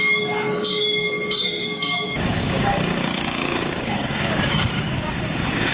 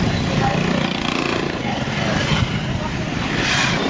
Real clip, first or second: second